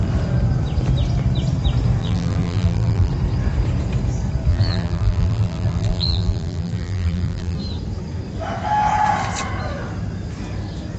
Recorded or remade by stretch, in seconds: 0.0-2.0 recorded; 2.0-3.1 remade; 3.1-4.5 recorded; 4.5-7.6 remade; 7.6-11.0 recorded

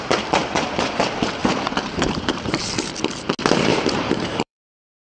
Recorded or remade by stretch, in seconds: 0.0-1.4 recorded; 1.4-2.6 remade; 2.6-3.7 recorded; 3.7-5.1 remade